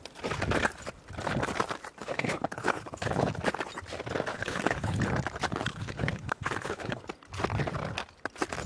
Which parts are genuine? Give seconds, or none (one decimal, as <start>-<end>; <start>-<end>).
0.0-2.0; 3.3-4.3; 5.0-5.7; 7.0-8.7